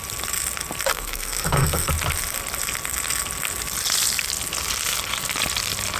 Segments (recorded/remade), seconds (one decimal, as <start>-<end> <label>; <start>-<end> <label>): 0.0-0.9 recorded; 0.9-1.9 remade; 1.9-6.0 recorded